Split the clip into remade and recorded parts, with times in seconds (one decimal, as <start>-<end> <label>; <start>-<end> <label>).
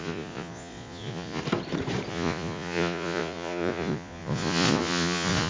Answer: 0.0-1.4 remade; 1.4-2.1 recorded; 2.1-5.5 remade